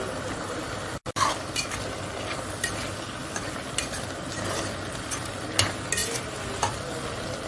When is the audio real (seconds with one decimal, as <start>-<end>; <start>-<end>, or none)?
0.0-7.5